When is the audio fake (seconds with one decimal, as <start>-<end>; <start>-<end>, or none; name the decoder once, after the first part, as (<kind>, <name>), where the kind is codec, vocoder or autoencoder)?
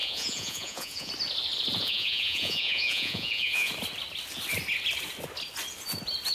0.0-1.1 (vocoder, Vocos); 1.8-3.7